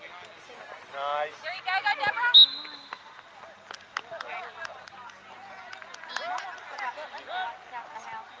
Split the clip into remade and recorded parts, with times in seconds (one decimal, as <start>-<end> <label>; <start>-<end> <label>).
0.0-8.4 recorded